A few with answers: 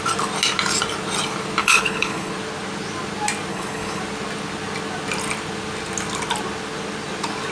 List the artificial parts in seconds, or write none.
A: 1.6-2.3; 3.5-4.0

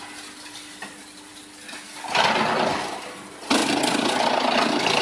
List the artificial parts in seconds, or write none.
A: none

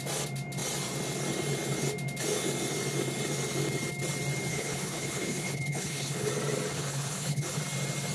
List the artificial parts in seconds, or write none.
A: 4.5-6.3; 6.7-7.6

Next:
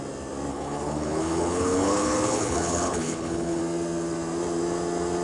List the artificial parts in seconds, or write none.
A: 0.5-3.6

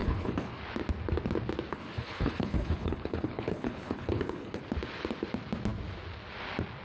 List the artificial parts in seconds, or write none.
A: 0.0-0.6; 1.7-4.6

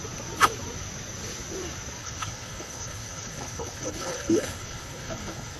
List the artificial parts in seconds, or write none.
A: 2.0-5.6

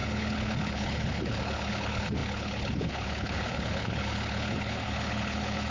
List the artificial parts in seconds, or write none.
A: 0.0-5.7

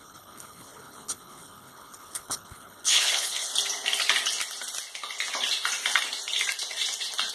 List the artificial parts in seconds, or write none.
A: 0.0-3.5